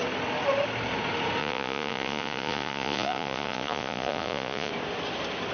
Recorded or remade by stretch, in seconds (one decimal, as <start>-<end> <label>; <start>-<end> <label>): 0.0-1.4 recorded; 1.4-4.7 remade; 4.7-5.5 recorded